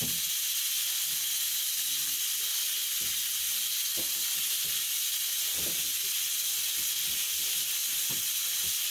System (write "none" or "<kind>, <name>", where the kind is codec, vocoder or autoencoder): none